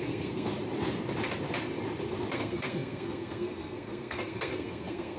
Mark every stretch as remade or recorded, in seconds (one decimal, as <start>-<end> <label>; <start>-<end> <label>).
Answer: 0.0-0.5 remade; 0.5-2.3 recorded; 2.3-5.2 remade